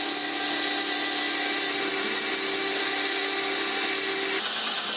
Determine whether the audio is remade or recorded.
recorded